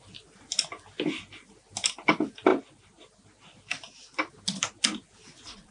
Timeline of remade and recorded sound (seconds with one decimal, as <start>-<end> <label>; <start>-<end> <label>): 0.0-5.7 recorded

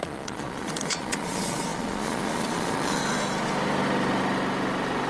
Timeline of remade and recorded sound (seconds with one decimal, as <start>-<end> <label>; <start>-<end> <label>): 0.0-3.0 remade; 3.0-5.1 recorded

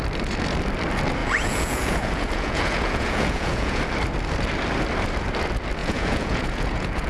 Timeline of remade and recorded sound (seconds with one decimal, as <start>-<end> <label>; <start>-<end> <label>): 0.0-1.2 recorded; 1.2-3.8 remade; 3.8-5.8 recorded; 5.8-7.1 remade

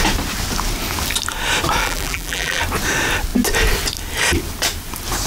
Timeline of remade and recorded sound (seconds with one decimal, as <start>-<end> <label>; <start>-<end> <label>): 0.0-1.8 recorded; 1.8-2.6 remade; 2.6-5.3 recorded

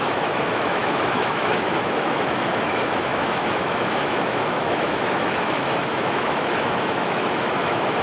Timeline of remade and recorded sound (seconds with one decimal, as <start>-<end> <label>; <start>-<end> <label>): 0.0-8.0 remade

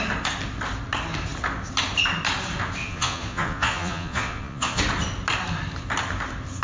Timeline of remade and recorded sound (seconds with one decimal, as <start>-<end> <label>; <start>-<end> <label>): 0.0-2.8 recorded; 2.8-4.8 remade; 4.8-6.6 recorded